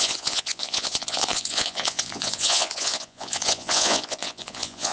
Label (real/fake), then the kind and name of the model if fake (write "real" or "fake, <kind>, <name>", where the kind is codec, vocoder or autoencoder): fake, vocoder, Vocos